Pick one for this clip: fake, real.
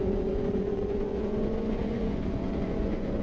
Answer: fake